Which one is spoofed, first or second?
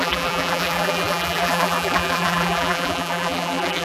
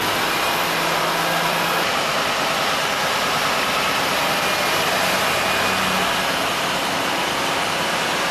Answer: first